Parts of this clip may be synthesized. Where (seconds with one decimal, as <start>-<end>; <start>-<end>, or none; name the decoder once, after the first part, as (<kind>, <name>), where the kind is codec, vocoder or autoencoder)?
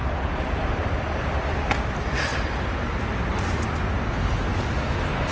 0.0-1.0 (vocoder, BigVGAN v2); 2.3-3.0; 4.5-5.3